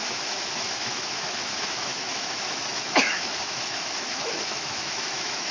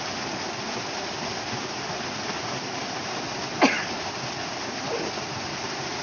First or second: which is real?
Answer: second